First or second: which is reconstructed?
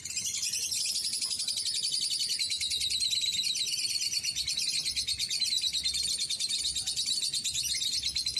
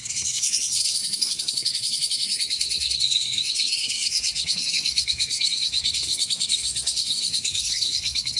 second